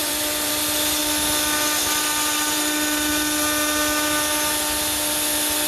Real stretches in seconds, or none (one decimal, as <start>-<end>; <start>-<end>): 0.5-5.7